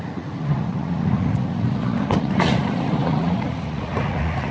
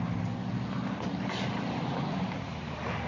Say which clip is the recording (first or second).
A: second